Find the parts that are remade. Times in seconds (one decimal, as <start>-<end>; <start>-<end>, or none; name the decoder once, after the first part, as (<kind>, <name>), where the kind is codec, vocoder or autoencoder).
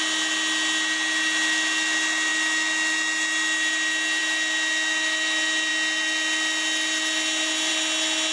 none